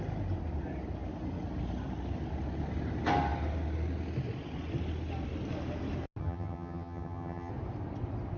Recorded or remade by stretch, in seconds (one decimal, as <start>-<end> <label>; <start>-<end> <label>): 0.0-6.2 recorded; 6.2-7.5 remade; 7.5-8.4 recorded